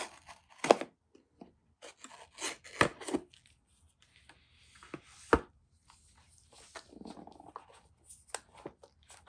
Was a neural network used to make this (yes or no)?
no